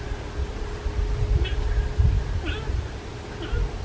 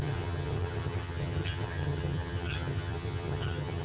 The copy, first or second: second